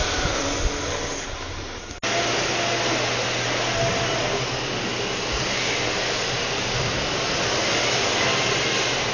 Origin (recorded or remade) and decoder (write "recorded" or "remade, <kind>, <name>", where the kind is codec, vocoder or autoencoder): recorded